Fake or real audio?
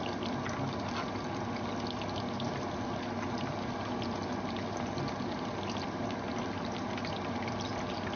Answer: real